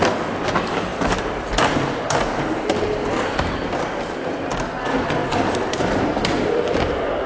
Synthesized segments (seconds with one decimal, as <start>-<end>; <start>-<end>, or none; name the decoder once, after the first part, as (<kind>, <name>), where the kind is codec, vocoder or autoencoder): 0.9-4.4 (vocoder, BigVGAN v2); 5.2-6.3